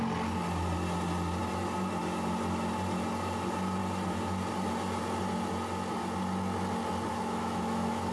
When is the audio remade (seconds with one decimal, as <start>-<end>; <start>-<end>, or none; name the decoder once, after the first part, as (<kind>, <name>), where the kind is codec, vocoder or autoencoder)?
7.1-8.1 (autoencoder, DAC-VAE)